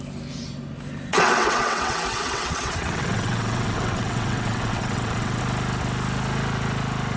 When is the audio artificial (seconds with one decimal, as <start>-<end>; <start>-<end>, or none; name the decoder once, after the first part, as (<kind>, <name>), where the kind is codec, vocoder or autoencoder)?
1.1-5.4 (vocoder, WaveNeXt)